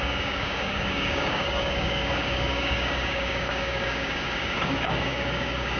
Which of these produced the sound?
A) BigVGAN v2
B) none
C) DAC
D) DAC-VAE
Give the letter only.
C